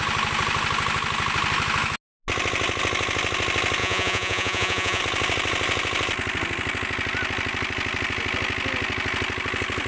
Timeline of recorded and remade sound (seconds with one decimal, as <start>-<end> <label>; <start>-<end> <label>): 0.0-3.8 recorded; 3.8-5.0 remade; 5.0-9.9 recorded